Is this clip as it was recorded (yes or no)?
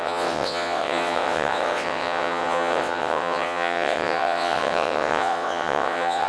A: no